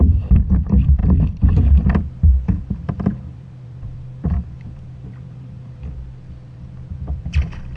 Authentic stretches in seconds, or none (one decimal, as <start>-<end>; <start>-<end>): none